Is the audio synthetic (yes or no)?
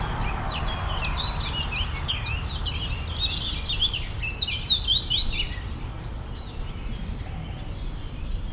no